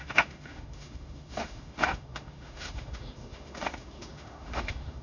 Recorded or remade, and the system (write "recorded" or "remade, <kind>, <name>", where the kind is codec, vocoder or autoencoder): remade, autoencoder, DAC-VAE